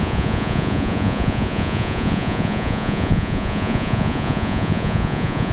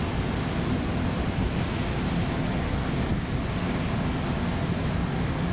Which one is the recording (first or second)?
second